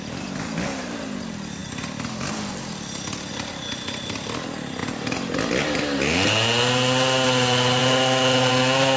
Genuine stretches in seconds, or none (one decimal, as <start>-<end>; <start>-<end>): 0.0-9.0